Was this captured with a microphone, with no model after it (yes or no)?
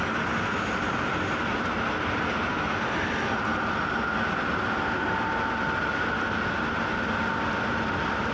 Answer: yes